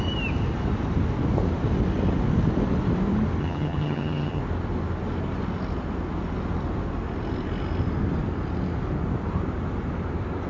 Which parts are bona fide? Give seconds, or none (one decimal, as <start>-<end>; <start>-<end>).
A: 0.0-3.4; 4.4-10.5